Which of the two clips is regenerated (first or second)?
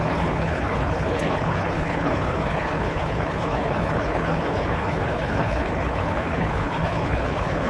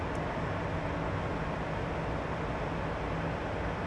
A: first